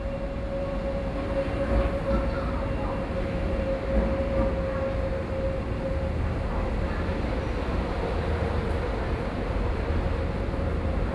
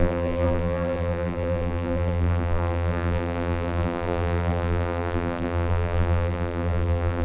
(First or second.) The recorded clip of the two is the first